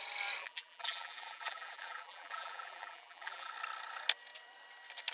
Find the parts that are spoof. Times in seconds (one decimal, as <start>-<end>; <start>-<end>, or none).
0.4-3.5